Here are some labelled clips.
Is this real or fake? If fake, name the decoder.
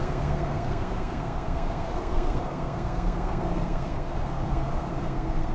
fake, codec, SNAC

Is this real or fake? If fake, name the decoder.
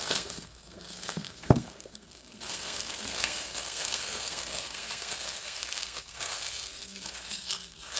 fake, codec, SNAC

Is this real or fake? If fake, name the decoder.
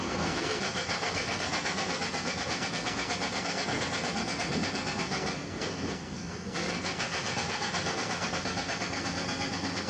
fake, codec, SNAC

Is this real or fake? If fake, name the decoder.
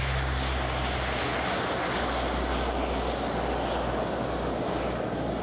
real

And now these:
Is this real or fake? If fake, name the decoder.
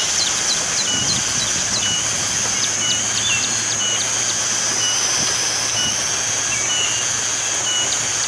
real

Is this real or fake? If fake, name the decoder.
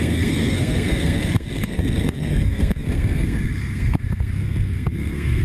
fake, codec, SNAC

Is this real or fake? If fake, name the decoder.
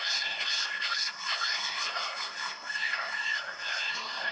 fake, codec, SNAC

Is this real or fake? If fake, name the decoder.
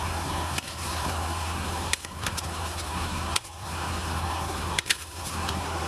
fake, codec, SNAC